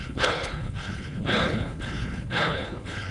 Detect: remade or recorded remade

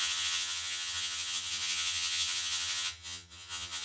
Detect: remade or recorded remade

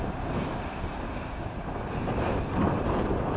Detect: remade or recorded remade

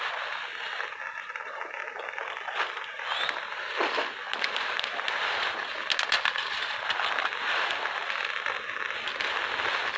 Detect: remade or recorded recorded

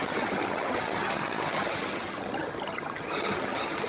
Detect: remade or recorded remade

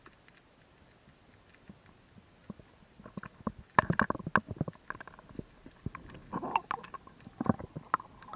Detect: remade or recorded recorded